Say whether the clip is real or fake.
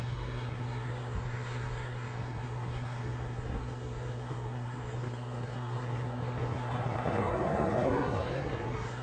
fake